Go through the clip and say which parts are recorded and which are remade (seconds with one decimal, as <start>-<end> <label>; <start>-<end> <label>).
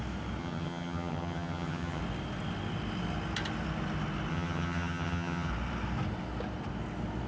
0.0-0.4 recorded; 0.4-2.0 remade; 2.0-4.3 recorded; 4.3-5.5 remade; 5.5-7.3 recorded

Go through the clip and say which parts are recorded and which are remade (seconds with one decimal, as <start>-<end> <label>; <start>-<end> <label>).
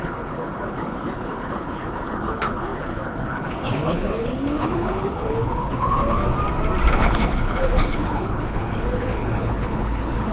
0.0-6.2 remade; 6.2-6.9 recorded; 6.9-10.3 remade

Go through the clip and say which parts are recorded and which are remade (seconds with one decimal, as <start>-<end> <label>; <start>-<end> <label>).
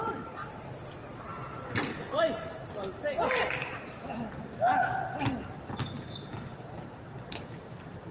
0.0-8.1 recorded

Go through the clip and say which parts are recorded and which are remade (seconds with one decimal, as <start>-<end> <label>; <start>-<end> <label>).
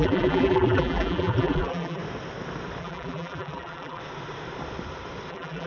0.0-2.0 remade; 2.0-2.8 recorded; 2.8-4.0 remade; 4.0-5.3 recorded; 5.3-5.7 remade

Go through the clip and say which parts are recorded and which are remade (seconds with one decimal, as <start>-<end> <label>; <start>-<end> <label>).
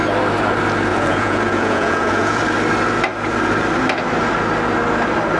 0.0-0.9 recorded; 0.9-2.4 remade; 2.4-5.4 recorded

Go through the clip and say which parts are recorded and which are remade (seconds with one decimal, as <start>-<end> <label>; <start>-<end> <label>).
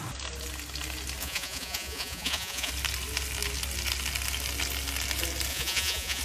0.0-1.2 recorded; 1.2-2.7 remade; 2.7-5.5 recorded; 5.5-6.2 remade